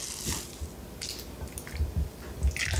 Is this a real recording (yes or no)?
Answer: yes